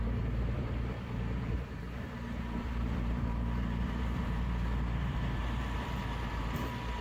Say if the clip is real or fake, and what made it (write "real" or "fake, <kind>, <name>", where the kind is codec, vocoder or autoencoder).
fake, vocoder, BigVGAN v2